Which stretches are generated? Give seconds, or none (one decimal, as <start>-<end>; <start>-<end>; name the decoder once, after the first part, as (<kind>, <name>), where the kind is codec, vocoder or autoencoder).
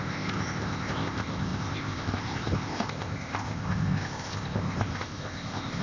0.0-5.8 (codec, ZipCodec)